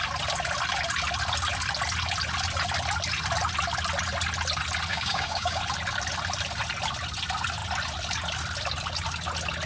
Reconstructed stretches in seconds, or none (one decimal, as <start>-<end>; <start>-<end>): 4.9-5.6